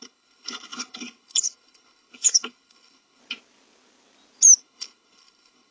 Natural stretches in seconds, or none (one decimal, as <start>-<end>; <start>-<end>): 3.2-4.6